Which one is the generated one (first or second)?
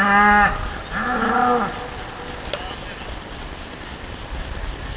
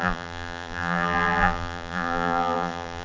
second